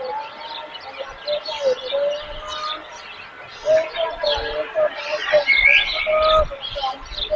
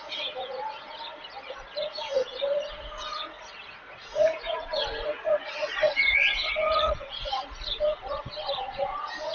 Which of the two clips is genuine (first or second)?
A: first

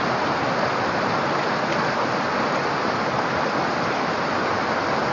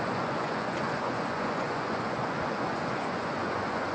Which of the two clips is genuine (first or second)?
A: first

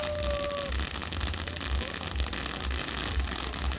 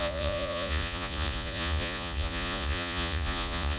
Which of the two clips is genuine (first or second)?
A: first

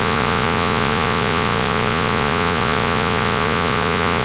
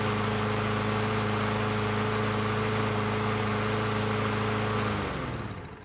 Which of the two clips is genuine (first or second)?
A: second